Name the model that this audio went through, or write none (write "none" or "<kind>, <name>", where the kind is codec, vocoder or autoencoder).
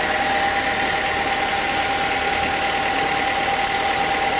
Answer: none